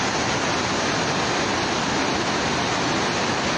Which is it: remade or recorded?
recorded